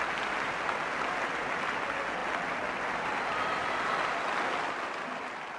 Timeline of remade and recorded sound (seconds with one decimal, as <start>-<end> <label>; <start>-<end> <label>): 0.0-5.6 recorded